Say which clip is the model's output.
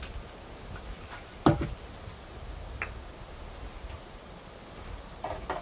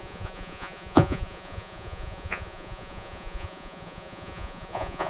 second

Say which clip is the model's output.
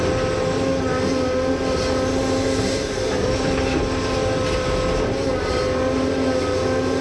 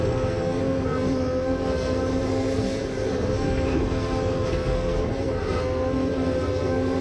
second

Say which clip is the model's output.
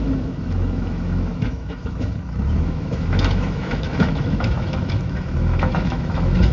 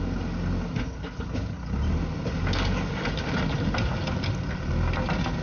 first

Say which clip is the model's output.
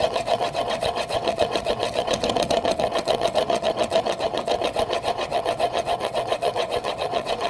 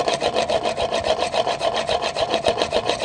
first